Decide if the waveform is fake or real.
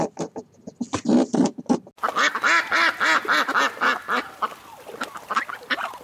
real